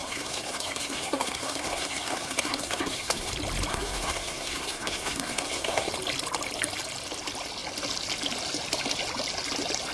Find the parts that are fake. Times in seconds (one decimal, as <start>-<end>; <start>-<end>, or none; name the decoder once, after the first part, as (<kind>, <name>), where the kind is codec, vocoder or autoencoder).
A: 0.0-3.3 (codec, SNAC); 3.7-5.9